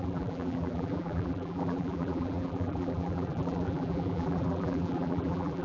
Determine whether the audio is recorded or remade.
remade